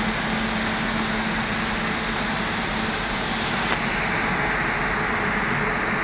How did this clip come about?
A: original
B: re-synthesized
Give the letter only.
A